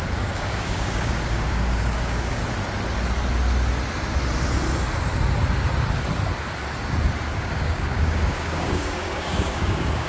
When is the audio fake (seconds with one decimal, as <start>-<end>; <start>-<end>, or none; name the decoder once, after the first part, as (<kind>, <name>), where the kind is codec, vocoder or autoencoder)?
0.0-2.4 (codec, DAC); 7.3-10.1